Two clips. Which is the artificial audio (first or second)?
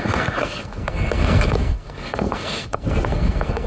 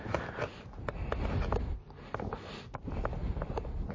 first